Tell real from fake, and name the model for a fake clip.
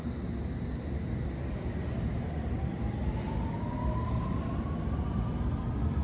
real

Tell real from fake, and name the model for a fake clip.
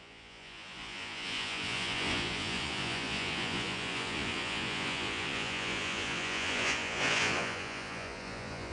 fake, vocoder, Vocos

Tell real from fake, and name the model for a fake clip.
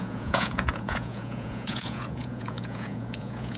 fake, vocoder, Vocos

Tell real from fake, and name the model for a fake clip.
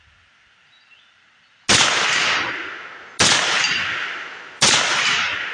real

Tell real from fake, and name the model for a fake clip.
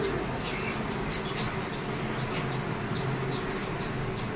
real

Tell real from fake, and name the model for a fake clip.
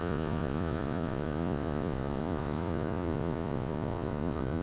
fake, vocoder, Vocos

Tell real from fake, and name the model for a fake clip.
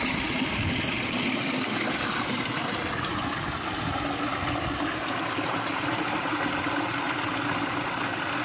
real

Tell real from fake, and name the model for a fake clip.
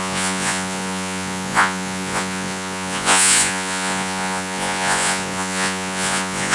fake, vocoder, Vocos